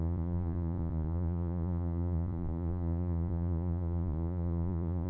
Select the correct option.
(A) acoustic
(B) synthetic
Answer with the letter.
B